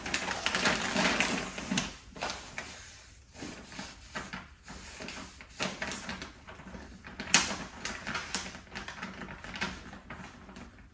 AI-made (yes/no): no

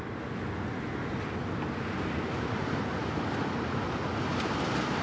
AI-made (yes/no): no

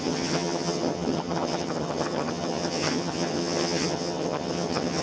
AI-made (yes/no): yes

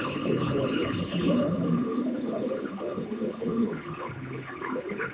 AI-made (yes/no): yes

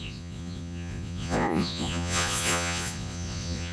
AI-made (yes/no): yes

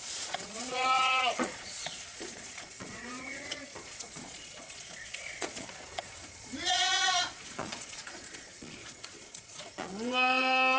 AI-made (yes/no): yes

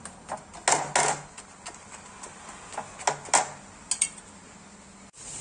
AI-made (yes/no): no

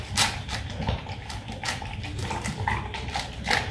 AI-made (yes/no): yes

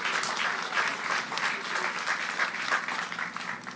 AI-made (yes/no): no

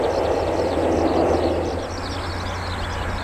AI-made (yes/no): no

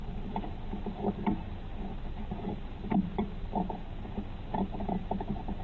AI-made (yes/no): no